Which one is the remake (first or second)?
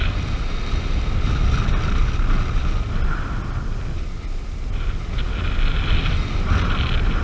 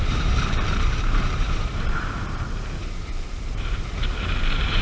second